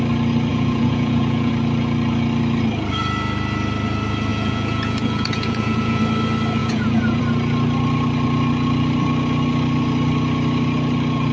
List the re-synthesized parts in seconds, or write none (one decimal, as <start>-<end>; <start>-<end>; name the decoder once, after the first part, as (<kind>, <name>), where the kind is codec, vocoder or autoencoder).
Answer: 0.5-1.5 (vocoder, Vocos); 4.3-6.0; 6.6-7.2